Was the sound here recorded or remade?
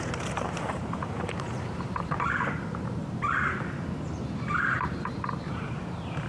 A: remade